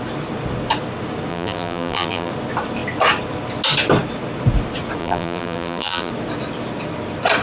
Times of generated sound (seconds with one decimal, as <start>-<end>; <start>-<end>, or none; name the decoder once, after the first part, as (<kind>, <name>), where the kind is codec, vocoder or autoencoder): 1.3-2.3 (vocoder, BigVGAN v2); 5.0-6.1